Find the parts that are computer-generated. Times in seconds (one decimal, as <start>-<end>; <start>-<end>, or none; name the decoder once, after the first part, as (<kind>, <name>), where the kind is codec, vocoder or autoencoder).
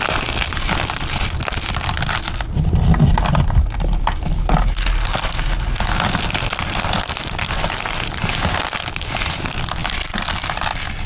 none